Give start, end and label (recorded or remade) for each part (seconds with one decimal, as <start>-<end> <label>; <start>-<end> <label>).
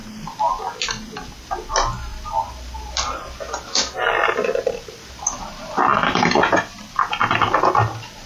0.0-8.3 recorded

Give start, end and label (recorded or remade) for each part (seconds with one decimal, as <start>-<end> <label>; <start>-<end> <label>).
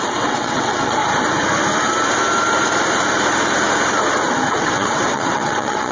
0.0-1.0 remade; 1.0-4.5 recorded; 4.5-5.9 remade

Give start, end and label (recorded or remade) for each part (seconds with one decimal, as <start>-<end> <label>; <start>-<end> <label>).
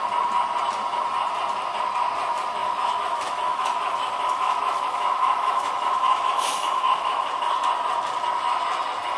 0.0-2.6 recorded; 2.6-7.3 remade; 7.3-9.2 recorded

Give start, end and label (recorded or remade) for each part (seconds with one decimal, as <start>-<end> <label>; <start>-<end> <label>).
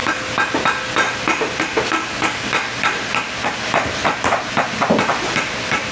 0.0-4.0 recorded; 4.0-4.7 remade; 4.7-5.9 recorded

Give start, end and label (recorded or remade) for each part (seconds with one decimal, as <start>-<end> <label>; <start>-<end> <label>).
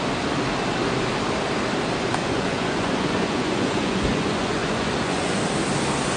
0.0-2.2 recorded; 2.2-5.4 remade; 5.4-6.2 recorded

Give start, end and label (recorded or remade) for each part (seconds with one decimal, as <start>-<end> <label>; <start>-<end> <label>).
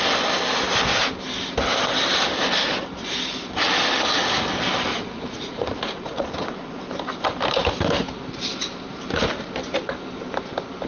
0.0-4.9 recorded; 4.9-6.8 remade; 6.8-10.9 recorded